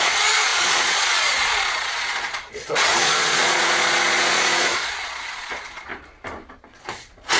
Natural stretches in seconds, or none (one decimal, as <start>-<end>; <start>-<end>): 5.9-6.8